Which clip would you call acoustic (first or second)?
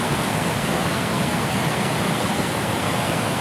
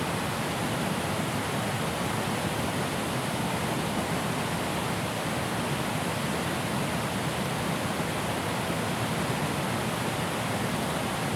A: second